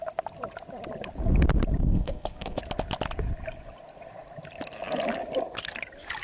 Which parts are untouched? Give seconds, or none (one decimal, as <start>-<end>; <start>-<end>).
0.0-1.8; 2.6-6.2